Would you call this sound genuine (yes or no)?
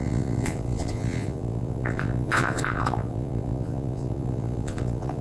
no